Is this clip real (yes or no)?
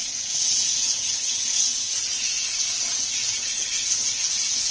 no